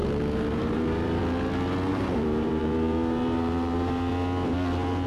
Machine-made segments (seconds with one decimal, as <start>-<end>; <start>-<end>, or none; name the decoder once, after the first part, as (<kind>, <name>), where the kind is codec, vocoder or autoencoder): 0.0-1.2 (vocoder, BigVGAN v2); 1.9-4.1